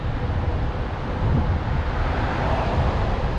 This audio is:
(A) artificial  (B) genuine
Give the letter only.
A